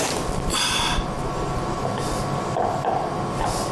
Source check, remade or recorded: recorded